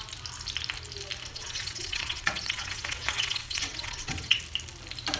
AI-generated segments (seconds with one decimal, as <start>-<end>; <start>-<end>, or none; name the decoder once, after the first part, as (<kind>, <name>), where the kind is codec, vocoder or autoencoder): 1.3-4.4 (vocoder, WaveNeXt)